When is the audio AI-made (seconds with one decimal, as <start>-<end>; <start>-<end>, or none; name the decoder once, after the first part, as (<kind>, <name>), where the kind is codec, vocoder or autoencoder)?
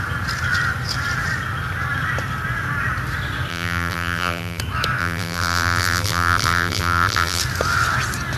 3.5-4.6 (vocoder, BigVGAN v2); 5.0-7.4